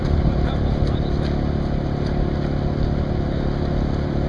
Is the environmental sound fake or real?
real